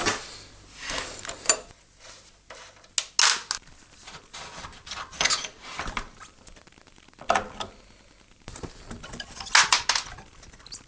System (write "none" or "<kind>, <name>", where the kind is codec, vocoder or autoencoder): none